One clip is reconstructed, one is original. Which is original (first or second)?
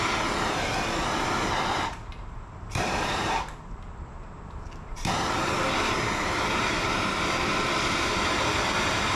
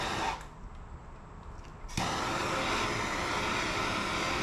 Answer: second